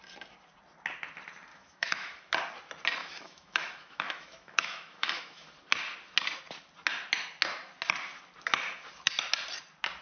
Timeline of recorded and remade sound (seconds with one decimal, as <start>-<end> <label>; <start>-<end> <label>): 0.0-1.5 recorded; 1.5-2.3 remade; 2.3-3.0 recorded; 3.0-5.5 remade; 5.5-10.0 recorded